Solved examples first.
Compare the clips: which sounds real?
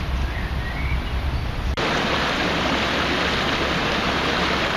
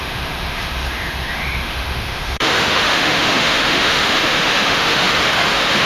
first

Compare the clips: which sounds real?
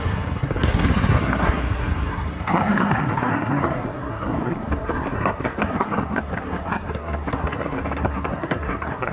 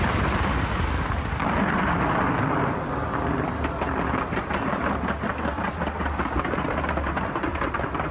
second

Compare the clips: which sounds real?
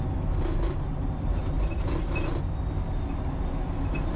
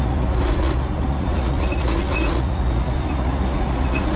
first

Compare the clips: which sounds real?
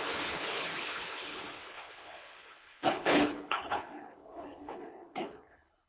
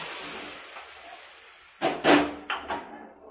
second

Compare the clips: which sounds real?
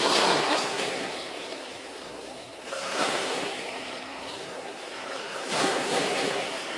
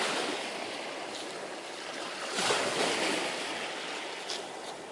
second